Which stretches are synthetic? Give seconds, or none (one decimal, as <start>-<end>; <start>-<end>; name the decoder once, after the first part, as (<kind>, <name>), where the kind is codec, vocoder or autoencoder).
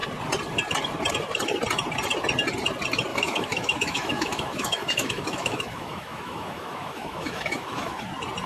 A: 3.1-8.0 (autoencoder, DAC-VAE)